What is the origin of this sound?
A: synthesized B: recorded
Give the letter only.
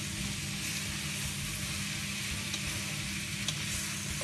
B